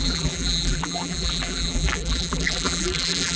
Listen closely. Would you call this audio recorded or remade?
remade